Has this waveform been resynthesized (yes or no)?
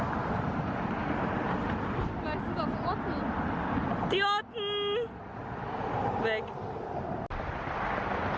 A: no